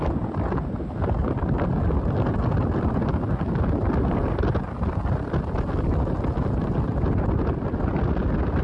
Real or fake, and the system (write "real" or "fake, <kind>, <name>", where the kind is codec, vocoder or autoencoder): real